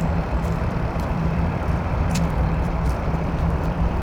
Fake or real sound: fake